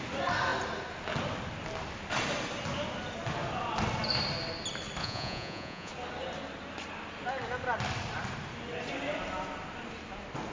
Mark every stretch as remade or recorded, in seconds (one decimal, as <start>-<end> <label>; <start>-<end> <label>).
0.0-5.0 recorded; 5.0-5.9 remade; 5.9-10.5 recorded